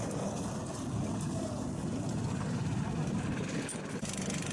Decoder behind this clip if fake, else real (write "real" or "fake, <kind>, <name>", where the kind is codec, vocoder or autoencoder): real